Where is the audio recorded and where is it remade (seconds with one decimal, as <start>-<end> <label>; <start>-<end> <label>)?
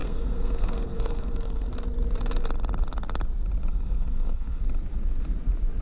0.0-1.7 remade; 1.7-3.7 recorded; 3.7-4.6 remade; 4.6-5.8 recorded